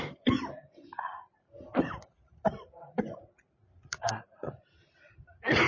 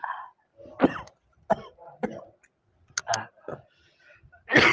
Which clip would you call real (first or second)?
second